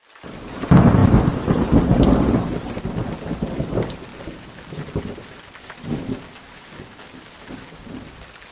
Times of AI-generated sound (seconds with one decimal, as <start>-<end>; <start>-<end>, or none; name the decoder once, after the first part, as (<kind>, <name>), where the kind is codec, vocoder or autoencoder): none